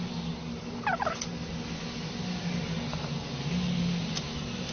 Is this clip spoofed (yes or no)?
no